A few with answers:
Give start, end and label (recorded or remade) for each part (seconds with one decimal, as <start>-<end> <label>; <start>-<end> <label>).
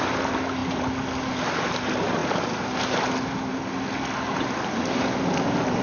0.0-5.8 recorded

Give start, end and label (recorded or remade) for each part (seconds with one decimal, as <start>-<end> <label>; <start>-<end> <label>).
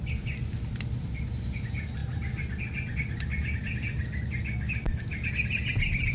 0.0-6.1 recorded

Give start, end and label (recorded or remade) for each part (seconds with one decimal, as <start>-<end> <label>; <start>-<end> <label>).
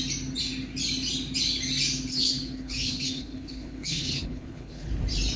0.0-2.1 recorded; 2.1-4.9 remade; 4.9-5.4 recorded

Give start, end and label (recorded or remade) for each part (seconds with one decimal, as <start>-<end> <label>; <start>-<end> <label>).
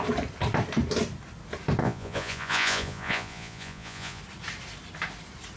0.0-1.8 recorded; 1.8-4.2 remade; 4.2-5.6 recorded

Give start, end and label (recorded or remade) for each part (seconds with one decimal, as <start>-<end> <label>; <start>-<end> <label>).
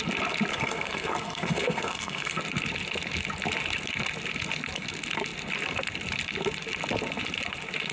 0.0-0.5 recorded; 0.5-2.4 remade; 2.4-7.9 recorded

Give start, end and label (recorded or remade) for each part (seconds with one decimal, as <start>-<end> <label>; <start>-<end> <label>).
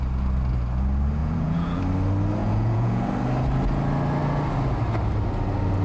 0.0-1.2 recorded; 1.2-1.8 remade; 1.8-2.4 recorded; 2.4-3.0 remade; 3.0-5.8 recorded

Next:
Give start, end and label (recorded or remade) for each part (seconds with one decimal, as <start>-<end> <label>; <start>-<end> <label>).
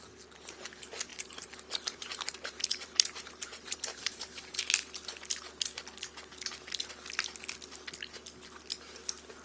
0.0-1.1 recorded; 1.1-4.6 remade; 4.6-9.4 recorded